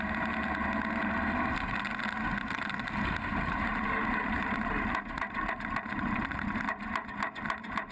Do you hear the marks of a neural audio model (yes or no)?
no